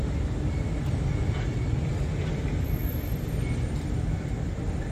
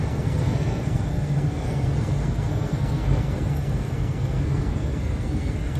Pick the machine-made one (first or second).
second